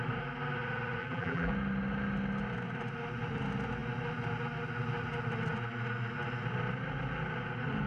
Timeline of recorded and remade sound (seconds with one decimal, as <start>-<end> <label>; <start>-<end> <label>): 0.0-1.0 recorded; 1.0-1.5 remade; 1.5-7.9 recorded